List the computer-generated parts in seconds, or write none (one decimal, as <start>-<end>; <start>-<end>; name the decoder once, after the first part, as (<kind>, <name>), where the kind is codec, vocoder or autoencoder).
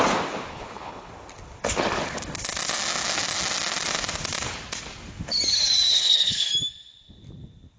0.5-1.1 (codec, HILCodec); 5.9-6.5